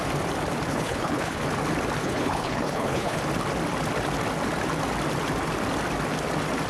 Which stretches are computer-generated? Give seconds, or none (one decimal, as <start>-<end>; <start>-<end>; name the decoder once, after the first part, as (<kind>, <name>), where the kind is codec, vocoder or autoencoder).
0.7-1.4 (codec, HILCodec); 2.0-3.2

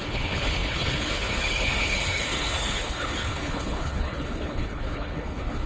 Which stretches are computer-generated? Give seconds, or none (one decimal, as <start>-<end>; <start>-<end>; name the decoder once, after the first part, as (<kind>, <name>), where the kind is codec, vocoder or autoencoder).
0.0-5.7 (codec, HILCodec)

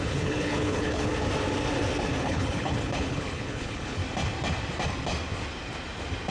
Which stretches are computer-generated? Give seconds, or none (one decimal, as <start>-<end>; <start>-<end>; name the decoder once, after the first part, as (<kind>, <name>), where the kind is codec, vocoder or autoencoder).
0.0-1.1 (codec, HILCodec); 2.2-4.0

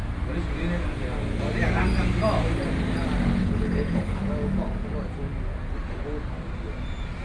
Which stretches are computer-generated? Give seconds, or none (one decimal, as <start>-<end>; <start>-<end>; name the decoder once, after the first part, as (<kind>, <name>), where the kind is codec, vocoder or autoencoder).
3.4-4.2 (codec, HILCodec)

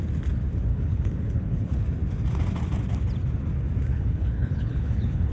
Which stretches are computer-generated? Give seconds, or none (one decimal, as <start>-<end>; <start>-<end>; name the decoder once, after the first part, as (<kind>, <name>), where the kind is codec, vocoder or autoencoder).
0.7-1.8 (codec, HILCodec); 3.9-5.3

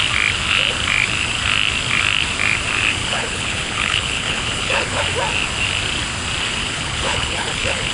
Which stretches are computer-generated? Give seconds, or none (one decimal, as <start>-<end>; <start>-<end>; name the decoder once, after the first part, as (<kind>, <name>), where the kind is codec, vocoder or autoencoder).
3.0-5.0 (codec, HILCodec); 6.6-7.9

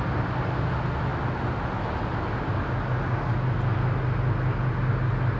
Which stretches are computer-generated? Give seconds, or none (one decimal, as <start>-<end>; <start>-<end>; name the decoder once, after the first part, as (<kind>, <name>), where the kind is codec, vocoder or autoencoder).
none

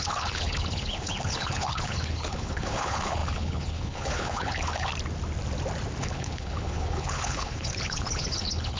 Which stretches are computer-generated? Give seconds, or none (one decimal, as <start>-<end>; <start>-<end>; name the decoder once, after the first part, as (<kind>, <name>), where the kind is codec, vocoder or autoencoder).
0.0-4.9 (codec, HILCodec); 6.0-8.8